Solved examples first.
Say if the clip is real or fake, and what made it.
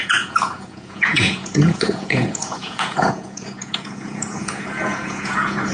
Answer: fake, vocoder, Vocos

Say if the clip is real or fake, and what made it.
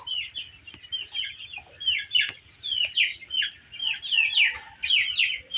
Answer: real